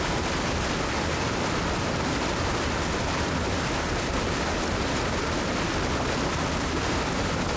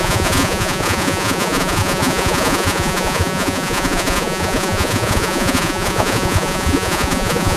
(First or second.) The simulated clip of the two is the second